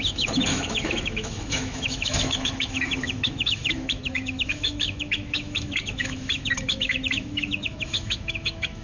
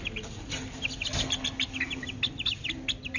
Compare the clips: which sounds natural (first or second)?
second